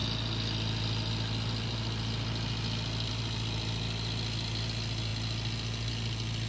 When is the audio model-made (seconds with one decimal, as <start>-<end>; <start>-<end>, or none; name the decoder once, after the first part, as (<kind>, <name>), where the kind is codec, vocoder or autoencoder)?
none